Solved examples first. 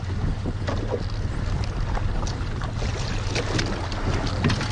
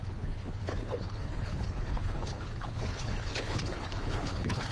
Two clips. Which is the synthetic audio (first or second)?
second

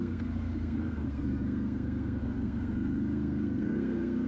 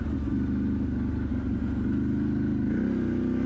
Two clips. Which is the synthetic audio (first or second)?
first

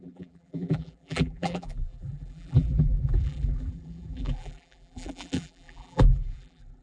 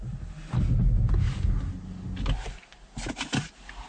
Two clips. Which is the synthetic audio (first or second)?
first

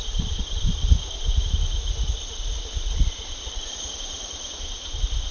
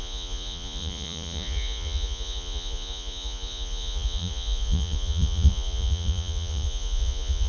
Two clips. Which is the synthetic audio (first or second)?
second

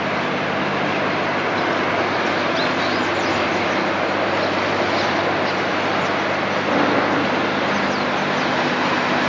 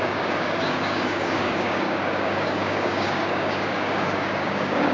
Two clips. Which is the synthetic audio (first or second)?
second